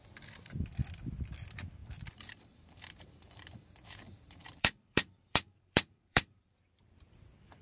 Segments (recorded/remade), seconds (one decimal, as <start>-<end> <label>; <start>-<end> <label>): 0.0-1.8 recorded; 1.8-6.4 remade; 6.4-7.6 recorded